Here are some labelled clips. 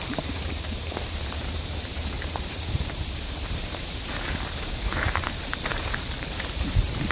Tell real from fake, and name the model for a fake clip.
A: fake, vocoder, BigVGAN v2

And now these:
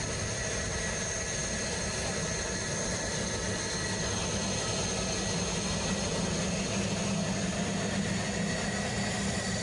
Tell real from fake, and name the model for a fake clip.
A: real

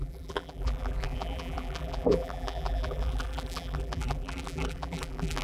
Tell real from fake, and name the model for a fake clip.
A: fake, vocoder, BigVGAN v2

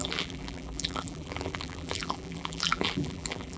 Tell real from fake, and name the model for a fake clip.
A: fake, vocoder, BigVGAN v2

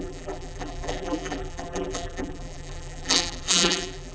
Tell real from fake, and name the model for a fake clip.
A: fake, vocoder, BigVGAN v2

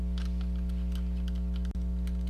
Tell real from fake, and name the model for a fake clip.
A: real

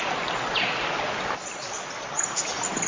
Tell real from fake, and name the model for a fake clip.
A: real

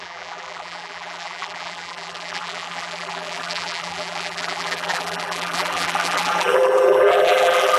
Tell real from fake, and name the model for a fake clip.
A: fake, vocoder, BigVGAN v2